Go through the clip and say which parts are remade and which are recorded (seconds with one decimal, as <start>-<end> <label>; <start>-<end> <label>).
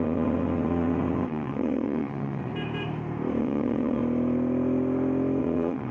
0.0-2.5 remade; 2.5-3.4 recorded; 3.4-4.0 remade; 4.0-5.4 recorded; 5.4-5.9 remade